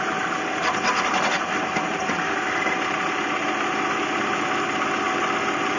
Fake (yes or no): no